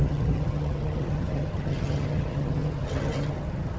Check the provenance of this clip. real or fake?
fake